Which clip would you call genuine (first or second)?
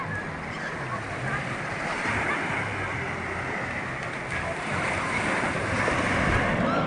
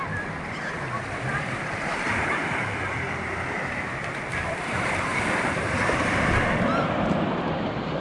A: first